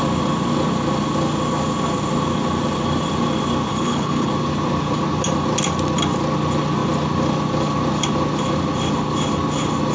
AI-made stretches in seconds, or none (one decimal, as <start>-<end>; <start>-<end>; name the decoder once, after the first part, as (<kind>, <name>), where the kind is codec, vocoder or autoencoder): 3.7-4.3 (codec, HILCodec)